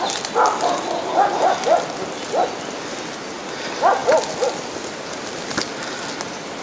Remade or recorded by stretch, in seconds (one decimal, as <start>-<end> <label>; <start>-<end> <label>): 0.0-6.6 recorded